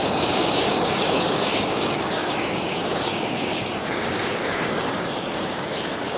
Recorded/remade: remade